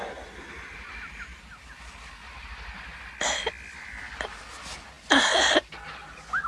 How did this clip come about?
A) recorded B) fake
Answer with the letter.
A